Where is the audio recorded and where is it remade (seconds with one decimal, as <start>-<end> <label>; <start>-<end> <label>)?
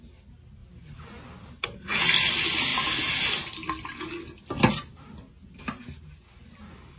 0.0-7.0 recorded